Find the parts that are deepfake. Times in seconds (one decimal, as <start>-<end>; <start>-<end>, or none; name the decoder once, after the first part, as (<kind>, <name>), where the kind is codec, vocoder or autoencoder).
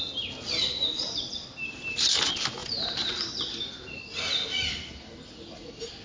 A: none